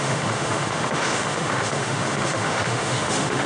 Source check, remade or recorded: remade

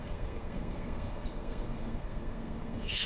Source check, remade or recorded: remade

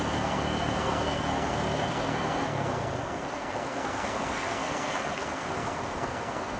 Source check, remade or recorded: remade